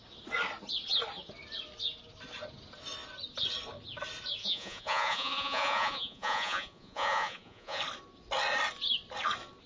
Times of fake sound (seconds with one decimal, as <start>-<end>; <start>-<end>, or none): 4.4-7.8